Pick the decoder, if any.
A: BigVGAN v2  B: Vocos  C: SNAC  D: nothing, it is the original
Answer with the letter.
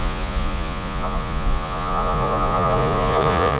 B